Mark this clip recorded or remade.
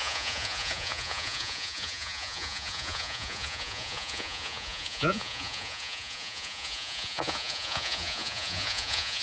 remade